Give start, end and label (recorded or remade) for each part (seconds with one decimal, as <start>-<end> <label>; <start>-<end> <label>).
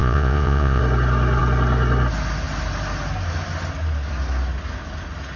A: 0.0-0.8 remade; 0.8-5.4 recorded